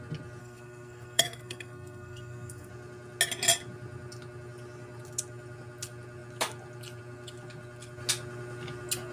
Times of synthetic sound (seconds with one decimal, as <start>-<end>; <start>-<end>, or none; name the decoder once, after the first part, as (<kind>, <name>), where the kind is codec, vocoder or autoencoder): 0.4-2.7 (codec, SNAC)